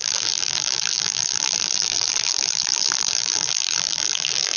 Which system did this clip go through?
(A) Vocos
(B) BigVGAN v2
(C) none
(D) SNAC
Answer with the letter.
B